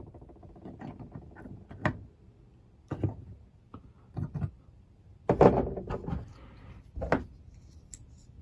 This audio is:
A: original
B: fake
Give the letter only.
A